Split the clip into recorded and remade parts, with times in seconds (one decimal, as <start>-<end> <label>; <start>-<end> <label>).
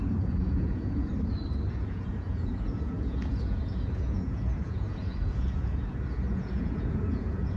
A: 0.0-1.1 remade; 1.1-1.7 recorded; 1.7-7.6 remade